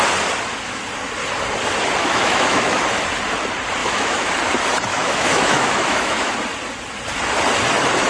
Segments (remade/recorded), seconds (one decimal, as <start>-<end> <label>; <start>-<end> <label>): 0.0-2.0 recorded; 2.0-2.8 remade; 2.8-3.8 recorded; 3.8-4.3 remade; 4.3-4.9 recorded; 4.9-6.3 remade; 6.3-8.1 recorded